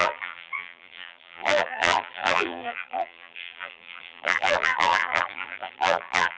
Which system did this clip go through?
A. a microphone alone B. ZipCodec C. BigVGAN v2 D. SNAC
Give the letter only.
C